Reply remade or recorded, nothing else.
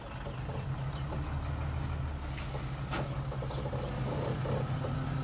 recorded